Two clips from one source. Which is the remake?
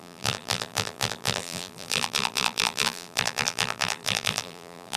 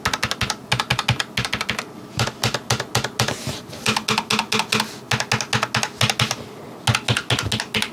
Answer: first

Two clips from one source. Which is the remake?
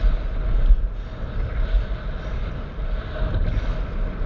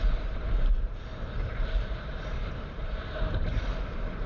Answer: second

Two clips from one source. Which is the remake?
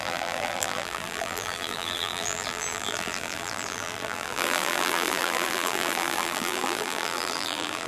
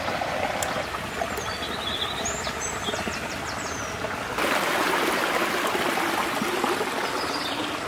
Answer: first